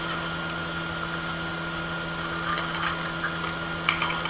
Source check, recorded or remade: recorded